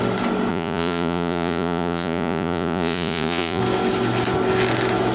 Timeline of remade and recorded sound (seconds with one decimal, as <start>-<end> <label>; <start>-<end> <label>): 0.0-0.5 recorded; 0.5-3.6 remade; 3.6-5.1 recorded